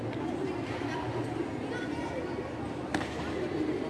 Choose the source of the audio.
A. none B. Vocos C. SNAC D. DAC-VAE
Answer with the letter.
A